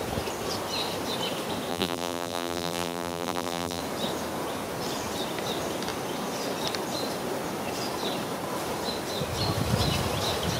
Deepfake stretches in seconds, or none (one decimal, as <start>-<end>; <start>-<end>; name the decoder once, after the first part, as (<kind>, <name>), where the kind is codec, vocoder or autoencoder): 1.7-3.8 (vocoder, BigVGAN v2)